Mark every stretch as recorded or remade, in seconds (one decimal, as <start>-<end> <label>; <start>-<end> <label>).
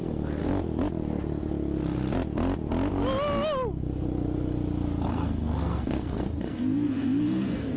0.0-0.4 remade; 0.4-5.1 recorded; 5.1-7.8 remade